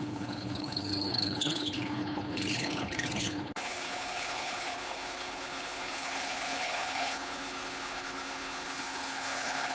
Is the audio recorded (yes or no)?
no